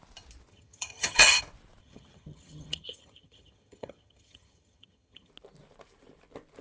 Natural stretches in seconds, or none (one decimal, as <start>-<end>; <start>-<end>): 0.0-0.5; 1.4-1.8; 5.3-6.6